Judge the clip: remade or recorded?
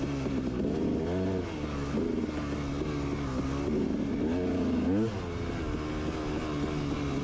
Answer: recorded